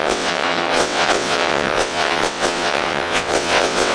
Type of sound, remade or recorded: remade